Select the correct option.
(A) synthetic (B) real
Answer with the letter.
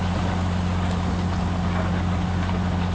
B